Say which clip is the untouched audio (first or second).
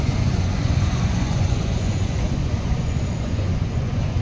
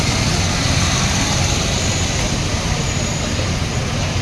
second